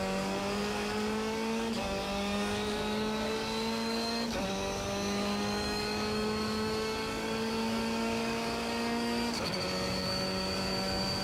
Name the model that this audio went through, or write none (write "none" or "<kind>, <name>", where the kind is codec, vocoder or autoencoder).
codec, DAC